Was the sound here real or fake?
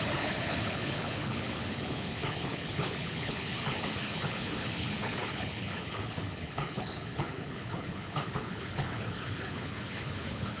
fake